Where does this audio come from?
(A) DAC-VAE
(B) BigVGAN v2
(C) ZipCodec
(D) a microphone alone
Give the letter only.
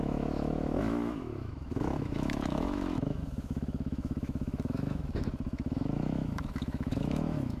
A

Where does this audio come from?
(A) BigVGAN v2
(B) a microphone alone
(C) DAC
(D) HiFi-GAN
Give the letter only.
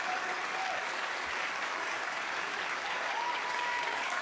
C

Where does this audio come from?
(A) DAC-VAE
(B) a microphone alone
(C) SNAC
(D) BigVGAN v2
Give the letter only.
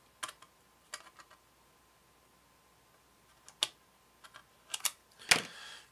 B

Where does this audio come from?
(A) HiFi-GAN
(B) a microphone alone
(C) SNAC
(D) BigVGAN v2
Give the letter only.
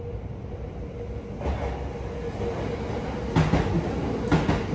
B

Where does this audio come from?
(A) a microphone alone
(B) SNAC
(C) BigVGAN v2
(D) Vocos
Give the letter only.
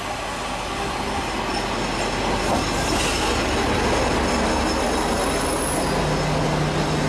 A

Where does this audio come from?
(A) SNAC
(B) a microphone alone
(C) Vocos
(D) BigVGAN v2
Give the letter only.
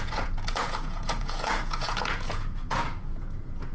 C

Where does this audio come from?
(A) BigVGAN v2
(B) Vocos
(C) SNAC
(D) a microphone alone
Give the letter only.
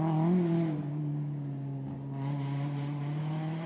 D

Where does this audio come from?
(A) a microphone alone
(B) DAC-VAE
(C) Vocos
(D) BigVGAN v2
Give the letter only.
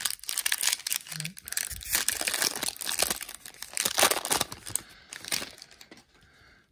A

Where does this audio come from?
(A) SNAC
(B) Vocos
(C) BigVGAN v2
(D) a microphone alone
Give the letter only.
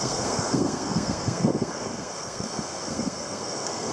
A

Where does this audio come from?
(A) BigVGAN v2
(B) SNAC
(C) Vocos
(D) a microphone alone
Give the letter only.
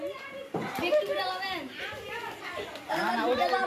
D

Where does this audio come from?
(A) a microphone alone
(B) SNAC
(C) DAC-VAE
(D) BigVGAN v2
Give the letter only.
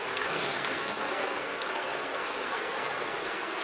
B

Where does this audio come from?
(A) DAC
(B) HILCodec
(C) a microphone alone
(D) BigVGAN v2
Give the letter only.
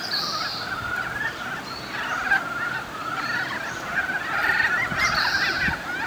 C